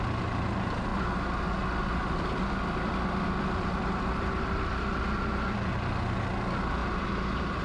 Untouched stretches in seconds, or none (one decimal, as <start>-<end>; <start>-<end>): 0.0-6.8